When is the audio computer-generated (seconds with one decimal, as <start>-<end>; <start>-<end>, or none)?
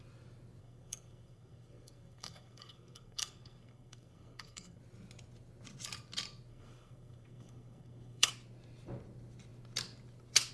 0.6-4.8; 6.5-8.3